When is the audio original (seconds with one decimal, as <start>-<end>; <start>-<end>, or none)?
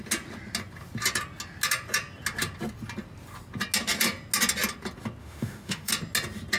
0.0-5.2; 5.9-6.6